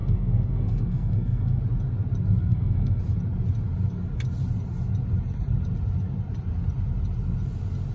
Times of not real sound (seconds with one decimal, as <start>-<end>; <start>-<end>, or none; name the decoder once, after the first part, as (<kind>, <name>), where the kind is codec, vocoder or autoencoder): 0.0-1.6 (codec, SNAC); 2.4-3.0